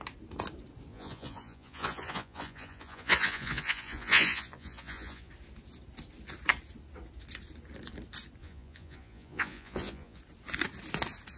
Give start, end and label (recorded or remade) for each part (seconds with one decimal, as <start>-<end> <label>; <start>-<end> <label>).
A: 0.0-0.9 recorded; 0.9-5.3 remade; 5.3-8.4 recorded; 8.4-10.2 remade; 10.2-11.4 recorded